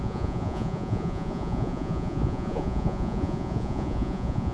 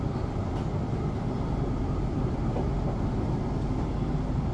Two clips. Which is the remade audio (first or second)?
first